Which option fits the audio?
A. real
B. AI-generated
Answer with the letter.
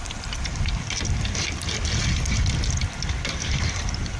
A